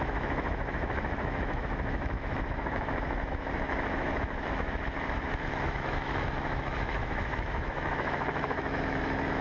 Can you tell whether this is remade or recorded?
remade